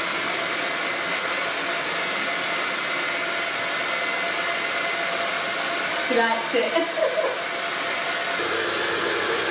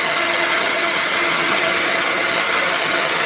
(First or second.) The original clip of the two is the first